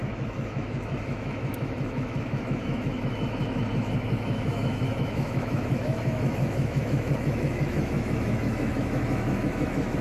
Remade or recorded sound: remade